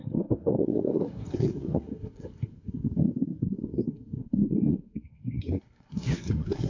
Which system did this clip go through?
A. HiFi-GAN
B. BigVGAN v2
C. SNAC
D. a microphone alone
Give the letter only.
C